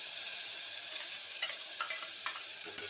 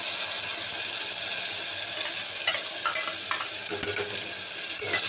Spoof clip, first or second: first